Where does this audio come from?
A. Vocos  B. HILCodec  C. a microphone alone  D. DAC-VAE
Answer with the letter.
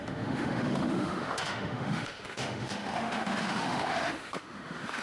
D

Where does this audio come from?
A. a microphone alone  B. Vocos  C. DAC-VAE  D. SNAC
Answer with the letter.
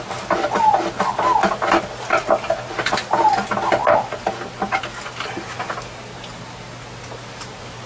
A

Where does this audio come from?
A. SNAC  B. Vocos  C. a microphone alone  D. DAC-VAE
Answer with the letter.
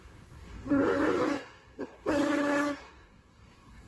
A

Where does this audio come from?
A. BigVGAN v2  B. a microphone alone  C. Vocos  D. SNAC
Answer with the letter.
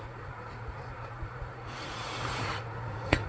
C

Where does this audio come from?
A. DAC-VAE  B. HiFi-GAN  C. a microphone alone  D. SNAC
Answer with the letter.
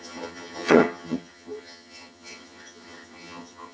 B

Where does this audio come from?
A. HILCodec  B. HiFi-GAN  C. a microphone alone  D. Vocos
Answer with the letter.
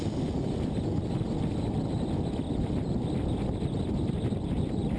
C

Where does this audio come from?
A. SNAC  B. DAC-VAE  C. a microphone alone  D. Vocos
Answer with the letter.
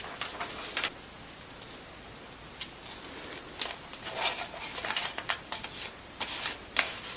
C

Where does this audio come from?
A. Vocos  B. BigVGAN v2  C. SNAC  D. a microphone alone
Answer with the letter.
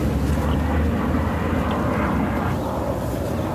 D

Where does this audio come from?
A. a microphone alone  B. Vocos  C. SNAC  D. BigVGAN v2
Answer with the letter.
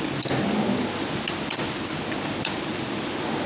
A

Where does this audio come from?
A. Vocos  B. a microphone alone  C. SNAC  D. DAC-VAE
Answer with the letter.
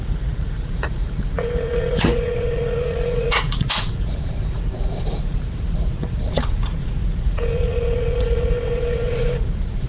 A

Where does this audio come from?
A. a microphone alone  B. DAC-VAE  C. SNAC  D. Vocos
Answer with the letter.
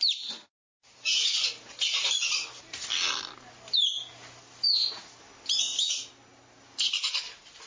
A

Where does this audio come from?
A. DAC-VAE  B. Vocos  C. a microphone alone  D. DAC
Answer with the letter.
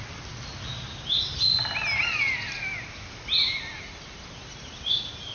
C